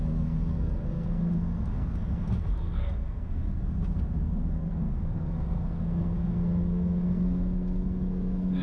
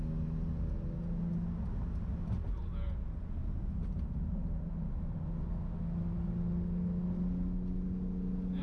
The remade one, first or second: first